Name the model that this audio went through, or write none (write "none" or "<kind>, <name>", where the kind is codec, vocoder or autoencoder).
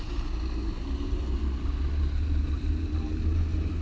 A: none